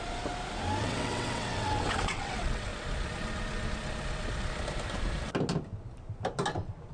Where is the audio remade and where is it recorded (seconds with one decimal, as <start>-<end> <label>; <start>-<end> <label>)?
0.0-0.8 recorded; 0.8-2.7 remade; 2.7-6.9 recorded

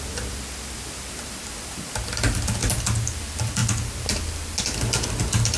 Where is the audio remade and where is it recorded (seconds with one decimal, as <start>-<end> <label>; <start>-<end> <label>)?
0.0-5.6 recorded

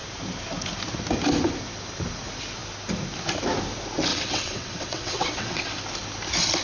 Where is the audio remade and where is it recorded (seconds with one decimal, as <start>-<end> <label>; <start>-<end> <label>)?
0.0-4.1 recorded; 4.1-5.8 remade; 5.8-6.6 recorded

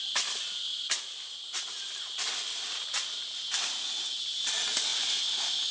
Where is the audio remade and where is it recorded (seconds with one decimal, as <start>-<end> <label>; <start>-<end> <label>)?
0.0-5.7 recorded

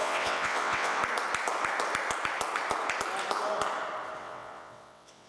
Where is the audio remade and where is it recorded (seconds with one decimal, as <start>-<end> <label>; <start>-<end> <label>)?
0.0-1.0 remade; 1.0-4.2 recorded; 4.2-5.3 remade

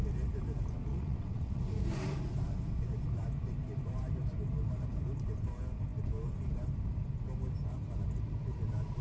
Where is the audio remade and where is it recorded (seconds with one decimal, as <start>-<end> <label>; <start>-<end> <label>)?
0.0-0.9 recorded; 0.9-1.6 remade; 1.6-9.0 recorded

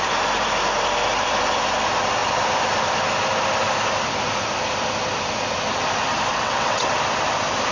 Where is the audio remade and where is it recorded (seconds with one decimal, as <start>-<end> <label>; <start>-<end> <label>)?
0.0-6.3 recorded; 6.3-6.9 remade; 6.9-7.7 recorded

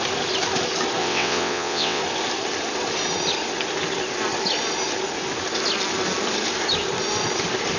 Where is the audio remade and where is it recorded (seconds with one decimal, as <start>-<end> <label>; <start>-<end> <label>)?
0.0-1.0 recorded; 1.0-2.0 remade; 2.0-7.8 recorded